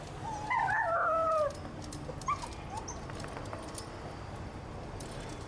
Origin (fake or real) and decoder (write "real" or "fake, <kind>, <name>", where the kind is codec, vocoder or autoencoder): real